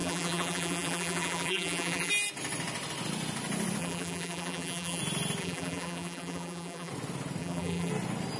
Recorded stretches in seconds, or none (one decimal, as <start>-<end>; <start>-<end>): 2.1-3.8; 5.0-5.4; 6.9-7.4; 7.9-8.4